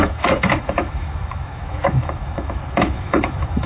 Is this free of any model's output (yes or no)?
no